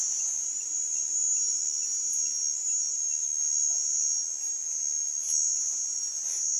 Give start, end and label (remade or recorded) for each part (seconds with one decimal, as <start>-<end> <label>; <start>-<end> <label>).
0.0-6.6 recorded